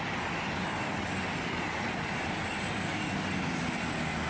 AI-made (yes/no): no